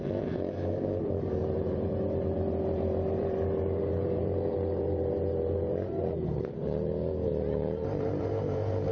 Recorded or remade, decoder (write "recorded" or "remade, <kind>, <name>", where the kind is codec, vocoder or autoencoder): remade, vocoder, BigVGAN v2